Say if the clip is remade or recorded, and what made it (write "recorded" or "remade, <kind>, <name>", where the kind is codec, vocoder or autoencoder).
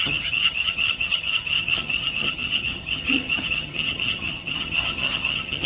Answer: remade, vocoder, HiFi-GAN